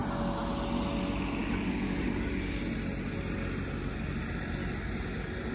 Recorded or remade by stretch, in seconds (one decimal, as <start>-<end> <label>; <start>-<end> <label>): 0.0-1.4 recorded; 1.4-2.6 remade; 2.6-5.5 recorded